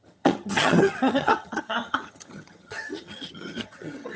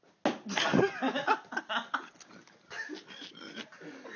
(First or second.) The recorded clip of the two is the second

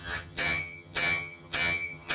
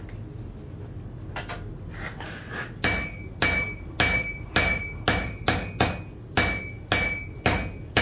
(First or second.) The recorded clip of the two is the second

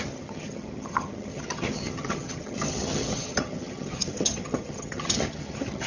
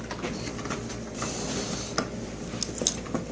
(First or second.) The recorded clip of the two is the second